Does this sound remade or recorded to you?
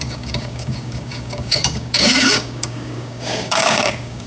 remade